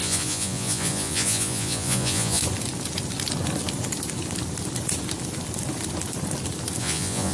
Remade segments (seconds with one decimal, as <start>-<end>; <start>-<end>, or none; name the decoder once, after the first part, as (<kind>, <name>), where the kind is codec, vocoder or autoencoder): 0.0-2.4 (vocoder, Vocos); 6.8-7.3